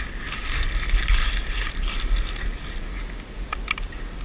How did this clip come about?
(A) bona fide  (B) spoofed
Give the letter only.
A